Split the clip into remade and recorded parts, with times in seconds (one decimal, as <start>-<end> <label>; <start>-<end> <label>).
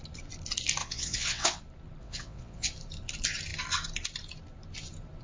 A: 0.0-0.8 recorded; 0.8-1.6 remade; 1.6-2.0 recorded; 2.0-2.7 remade; 2.7-5.2 recorded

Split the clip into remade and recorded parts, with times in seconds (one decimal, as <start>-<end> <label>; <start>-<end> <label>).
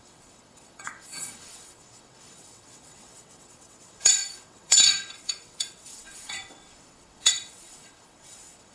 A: 0.0-8.7 remade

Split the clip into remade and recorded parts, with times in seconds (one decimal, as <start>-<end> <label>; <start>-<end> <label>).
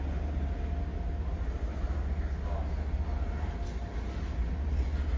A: 0.0-5.2 recorded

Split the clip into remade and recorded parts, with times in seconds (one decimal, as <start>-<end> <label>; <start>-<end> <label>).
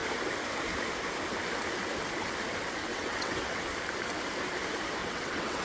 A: 0.0-2.9 recorded; 2.9-3.6 remade; 3.6-5.0 recorded; 5.0-5.6 remade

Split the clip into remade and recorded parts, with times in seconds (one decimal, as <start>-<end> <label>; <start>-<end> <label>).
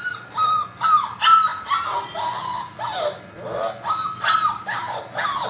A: 0.0-5.5 recorded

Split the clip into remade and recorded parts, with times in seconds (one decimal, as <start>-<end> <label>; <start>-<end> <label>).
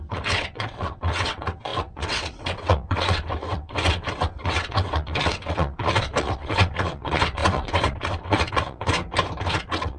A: 0.0-9.0 remade; 9.0-9.6 recorded; 9.6-10.0 remade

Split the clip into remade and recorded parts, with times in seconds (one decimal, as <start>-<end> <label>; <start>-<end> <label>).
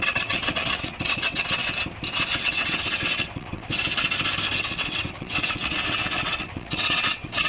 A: 0.0-1.6 remade; 1.6-2.3 recorded; 2.3-3.7 remade; 3.7-4.6 recorded; 4.6-7.5 remade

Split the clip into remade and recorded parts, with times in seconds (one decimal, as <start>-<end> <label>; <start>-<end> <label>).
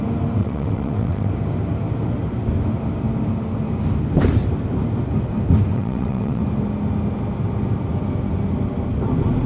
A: 0.0-0.4 recorded; 0.4-1.3 remade; 1.3-5.7 recorded; 5.7-6.4 remade; 6.4-9.5 recorded